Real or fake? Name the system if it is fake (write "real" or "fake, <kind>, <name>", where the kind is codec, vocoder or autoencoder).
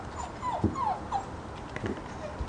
real